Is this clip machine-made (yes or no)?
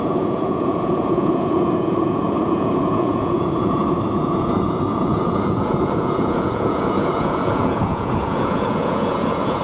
yes